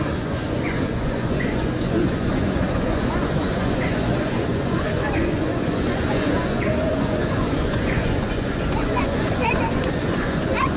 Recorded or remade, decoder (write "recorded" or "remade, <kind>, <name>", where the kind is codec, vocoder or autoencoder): remade, vocoder, Vocos